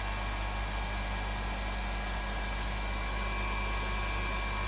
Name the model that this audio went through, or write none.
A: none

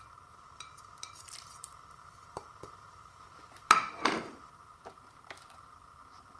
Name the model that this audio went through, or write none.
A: vocoder, BigVGAN v2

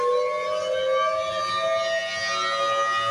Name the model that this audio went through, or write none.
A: none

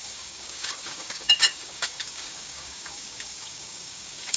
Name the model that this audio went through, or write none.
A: codec, DAC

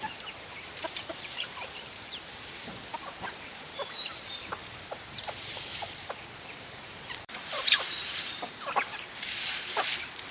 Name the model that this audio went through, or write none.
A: vocoder, BigVGAN v2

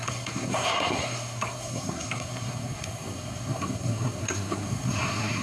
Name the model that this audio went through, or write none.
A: codec, SNAC